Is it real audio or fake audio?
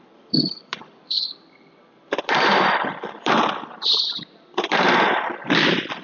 fake